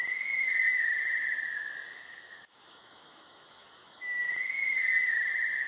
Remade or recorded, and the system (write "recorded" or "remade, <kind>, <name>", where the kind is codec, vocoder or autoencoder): remade, autoencoder, DAC-VAE